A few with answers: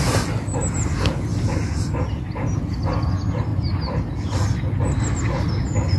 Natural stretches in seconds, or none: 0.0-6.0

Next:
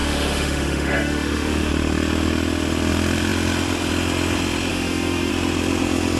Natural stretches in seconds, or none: 1.7-4.7; 5.3-6.2

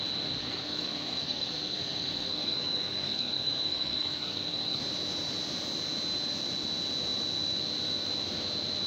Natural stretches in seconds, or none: 0.0-0.4; 4.8-8.9

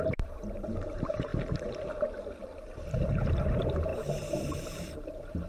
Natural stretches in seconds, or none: 1.3-3.0

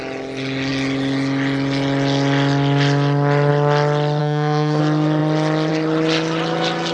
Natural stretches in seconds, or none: 0.0-4.2; 4.8-6.9

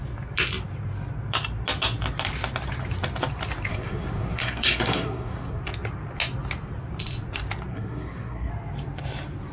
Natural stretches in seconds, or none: 0.0-3.7; 5.6-7.7; 8.5-9.5